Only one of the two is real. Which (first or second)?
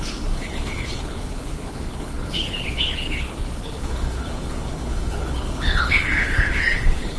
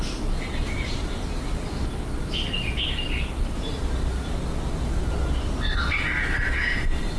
second